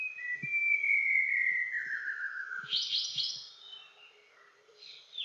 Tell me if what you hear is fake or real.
real